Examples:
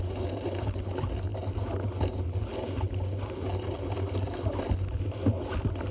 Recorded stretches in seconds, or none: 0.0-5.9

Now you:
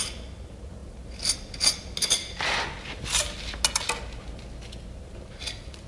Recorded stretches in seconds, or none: 0.0-5.9

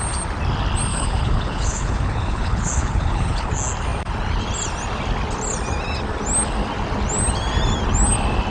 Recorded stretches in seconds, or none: 0.0-0.9; 3.5-8.5

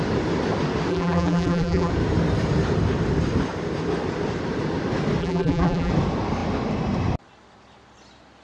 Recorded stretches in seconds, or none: 0.0-0.9; 1.9-5.2; 5.9-8.4

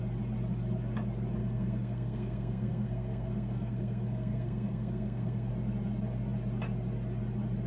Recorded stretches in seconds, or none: 0.0-1.4; 5.5-7.7

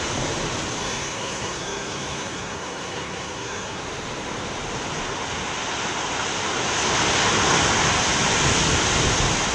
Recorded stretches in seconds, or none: 0.0-0.8; 3.8-9.5